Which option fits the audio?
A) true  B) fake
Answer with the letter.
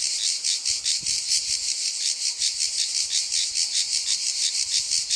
A